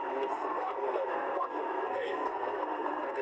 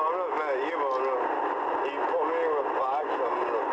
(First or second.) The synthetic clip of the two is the first